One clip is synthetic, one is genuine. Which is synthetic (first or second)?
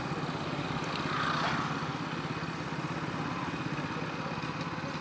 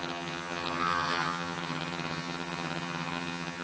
second